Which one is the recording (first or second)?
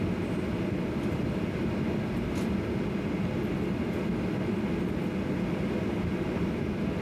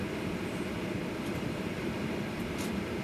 first